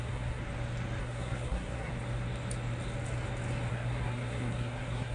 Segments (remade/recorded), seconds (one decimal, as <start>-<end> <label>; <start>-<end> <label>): 0.0-0.4 remade; 0.4-1.0 recorded; 1.0-1.9 remade; 1.9-3.7 recorded; 3.7-5.1 remade

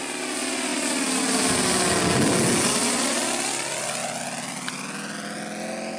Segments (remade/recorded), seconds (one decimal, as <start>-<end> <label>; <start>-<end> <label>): 0.0-6.0 recorded

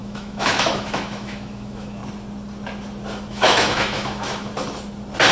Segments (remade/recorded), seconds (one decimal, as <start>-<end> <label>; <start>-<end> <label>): 0.0-2.0 remade; 2.0-3.3 recorded; 3.3-4.5 remade; 4.5-5.3 recorded

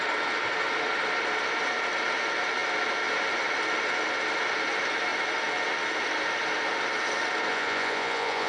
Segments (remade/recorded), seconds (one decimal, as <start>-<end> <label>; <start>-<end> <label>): 0.0-7.5 recorded; 7.5-8.5 remade

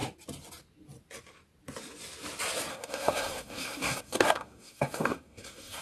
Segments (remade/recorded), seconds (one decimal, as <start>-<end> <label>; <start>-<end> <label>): 0.0-2.7 recorded; 2.7-5.8 remade